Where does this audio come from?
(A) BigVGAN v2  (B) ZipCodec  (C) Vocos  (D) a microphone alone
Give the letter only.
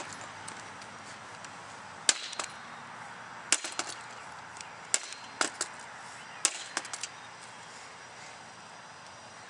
D